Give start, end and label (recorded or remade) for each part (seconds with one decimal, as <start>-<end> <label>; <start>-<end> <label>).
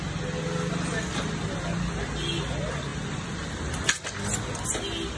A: 0.0-2.9 recorded; 2.9-4.0 remade; 4.0-5.2 recorded